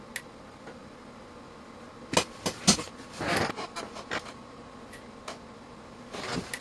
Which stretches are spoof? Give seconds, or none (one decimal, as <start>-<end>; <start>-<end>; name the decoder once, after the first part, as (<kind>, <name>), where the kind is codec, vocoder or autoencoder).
none